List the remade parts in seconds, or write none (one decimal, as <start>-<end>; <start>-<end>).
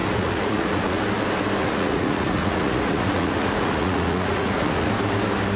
0.0-1.0; 1.6-4.9